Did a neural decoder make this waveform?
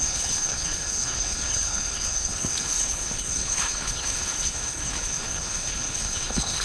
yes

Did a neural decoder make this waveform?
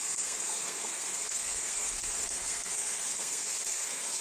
yes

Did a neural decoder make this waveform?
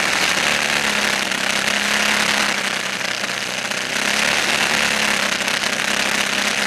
no